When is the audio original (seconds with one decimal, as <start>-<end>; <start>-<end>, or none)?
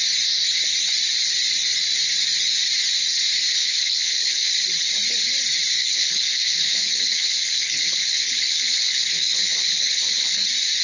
0.0-3.5; 4.5-5.8; 10.4-10.8